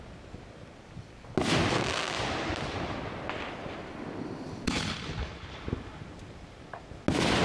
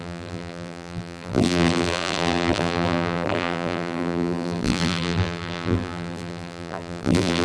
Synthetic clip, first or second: second